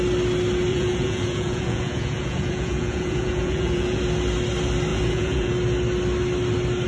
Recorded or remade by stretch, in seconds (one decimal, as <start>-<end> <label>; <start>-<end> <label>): 0.0-0.7 recorded; 0.7-4.0 remade; 4.0-4.9 recorded; 4.9-5.5 remade; 5.5-6.9 recorded